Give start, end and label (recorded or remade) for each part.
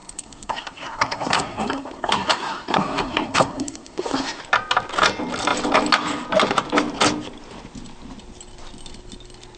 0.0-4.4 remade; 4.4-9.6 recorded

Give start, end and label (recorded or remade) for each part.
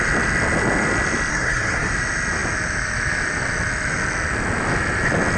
0.0-1.3 recorded; 1.3-1.9 remade; 1.9-5.4 recorded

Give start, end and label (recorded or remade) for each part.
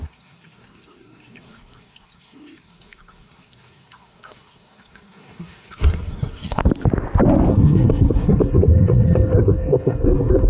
0.0-6.6 remade; 6.6-7.5 recorded; 7.5-10.5 remade